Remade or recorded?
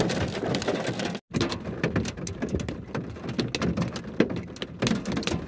recorded